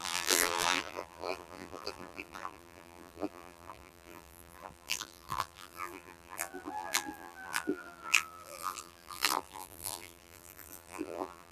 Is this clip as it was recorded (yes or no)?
no